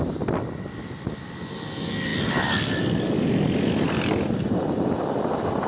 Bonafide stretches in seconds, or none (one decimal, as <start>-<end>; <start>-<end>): 0.0-5.7